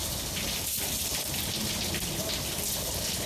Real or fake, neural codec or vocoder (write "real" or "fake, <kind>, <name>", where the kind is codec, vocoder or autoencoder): real